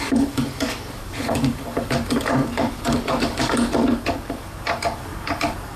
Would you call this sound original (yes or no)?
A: no